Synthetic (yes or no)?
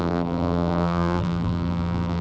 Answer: yes